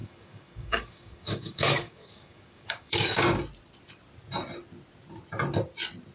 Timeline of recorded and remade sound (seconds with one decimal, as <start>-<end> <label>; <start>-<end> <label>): 0.0-3.2 remade; 3.2-6.1 recorded